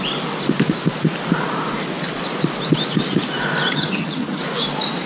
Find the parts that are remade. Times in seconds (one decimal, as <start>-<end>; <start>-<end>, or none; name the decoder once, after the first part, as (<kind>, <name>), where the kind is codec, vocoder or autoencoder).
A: 3.7-4.4 (vocoder, HiFi-GAN)